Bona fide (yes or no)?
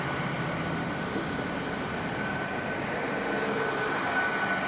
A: yes